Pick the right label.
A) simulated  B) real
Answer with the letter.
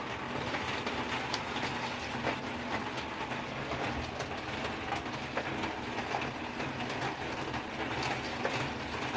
B